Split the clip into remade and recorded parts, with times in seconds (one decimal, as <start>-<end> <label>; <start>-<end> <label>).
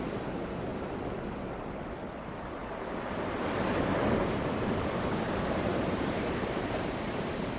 0.0-0.7 remade; 0.7-2.2 recorded; 2.2-7.6 remade